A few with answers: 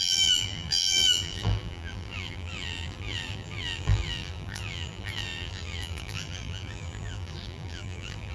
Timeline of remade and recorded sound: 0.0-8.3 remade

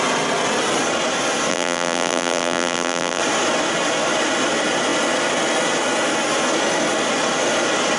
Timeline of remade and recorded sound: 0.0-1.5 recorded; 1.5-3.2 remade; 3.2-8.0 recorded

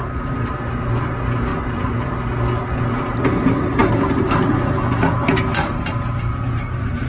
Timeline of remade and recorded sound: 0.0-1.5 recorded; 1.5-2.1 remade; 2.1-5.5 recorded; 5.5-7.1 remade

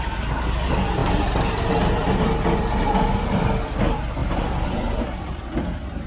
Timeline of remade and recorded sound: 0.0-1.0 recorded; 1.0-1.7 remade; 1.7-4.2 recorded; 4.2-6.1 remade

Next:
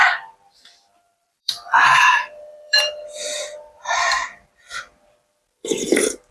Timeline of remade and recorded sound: 0.0-0.5 remade; 0.5-1.1 recorded; 1.1-4.9 remade; 4.9-6.3 recorded

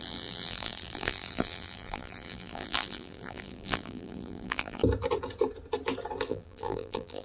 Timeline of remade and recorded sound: 0.0-4.8 remade; 4.8-6.3 recorded; 6.3-7.2 remade

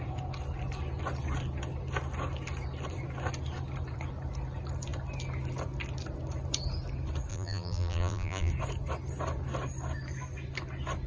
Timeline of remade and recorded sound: 0.0-7.3 recorded; 7.3-8.5 remade; 8.5-11.1 recorded

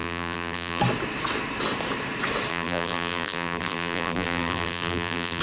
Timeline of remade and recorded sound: 0.0-0.8 remade; 0.8-2.5 recorded; 2.5-5.4 remade